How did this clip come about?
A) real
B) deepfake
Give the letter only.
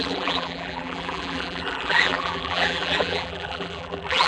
B